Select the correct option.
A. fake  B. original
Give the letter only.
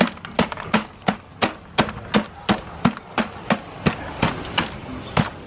B